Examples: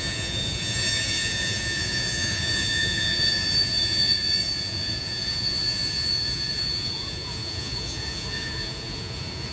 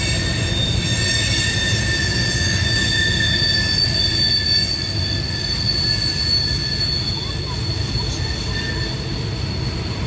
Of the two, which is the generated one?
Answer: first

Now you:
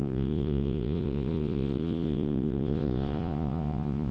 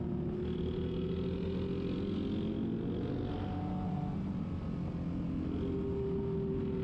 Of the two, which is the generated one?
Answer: first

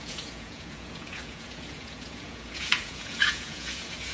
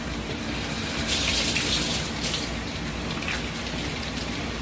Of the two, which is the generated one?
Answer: first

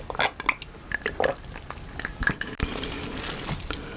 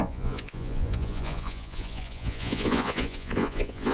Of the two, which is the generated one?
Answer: second